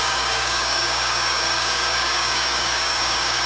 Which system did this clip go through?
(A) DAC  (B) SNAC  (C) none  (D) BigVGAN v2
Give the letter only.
A